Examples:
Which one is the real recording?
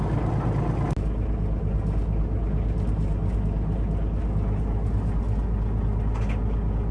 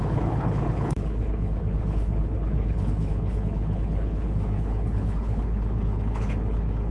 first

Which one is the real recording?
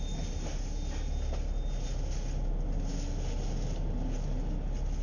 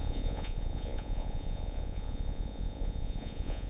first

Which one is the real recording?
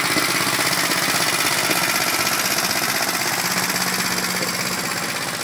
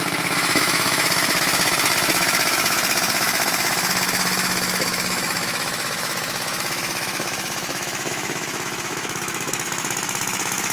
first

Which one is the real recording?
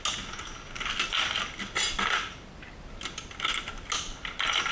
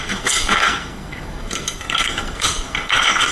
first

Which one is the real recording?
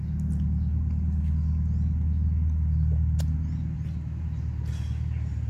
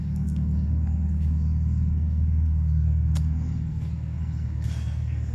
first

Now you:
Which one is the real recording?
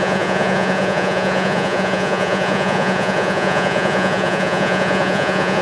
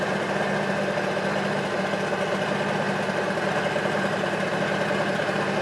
second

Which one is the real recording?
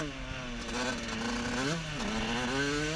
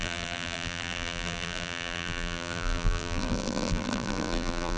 first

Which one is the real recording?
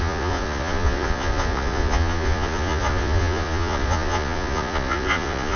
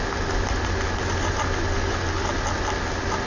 second